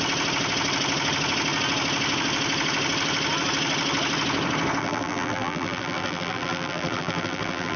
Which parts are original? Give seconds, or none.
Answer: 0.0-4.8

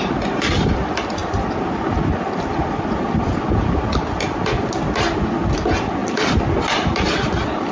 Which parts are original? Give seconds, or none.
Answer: 0.0-7.7

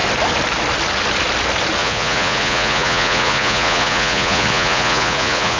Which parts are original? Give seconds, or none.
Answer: 0.0-1.8

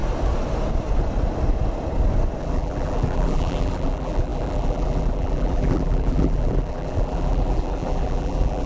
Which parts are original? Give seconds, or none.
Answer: 0.0-2.4

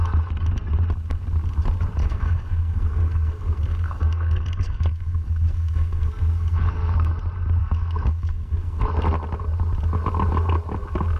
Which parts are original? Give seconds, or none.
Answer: 0.0-2.0; 7.1-7.6; 8.8-11.2

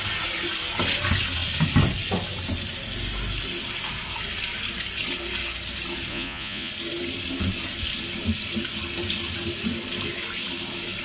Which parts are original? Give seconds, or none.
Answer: 0.0-6.1; 6.7-11.0

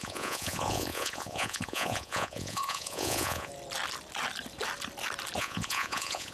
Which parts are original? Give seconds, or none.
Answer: 3.5-5.4

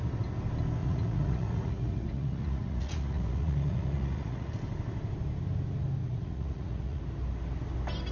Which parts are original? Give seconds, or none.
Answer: 0.0-0.8; 4.5-6.0; 7.0-8.1